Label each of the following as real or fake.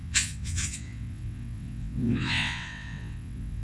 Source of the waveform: fake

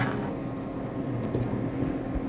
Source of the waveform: real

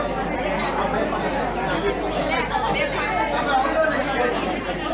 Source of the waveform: real